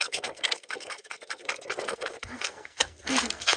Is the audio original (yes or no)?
no